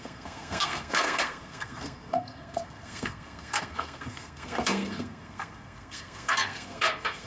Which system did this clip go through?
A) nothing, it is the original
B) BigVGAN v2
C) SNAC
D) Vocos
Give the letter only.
C